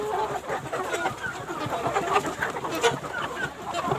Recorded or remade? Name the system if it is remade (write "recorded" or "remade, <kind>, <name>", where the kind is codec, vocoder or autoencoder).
recorded